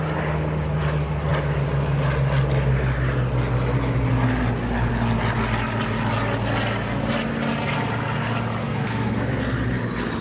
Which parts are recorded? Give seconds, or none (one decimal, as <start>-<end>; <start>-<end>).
0.0-8.6; 9.4-10.2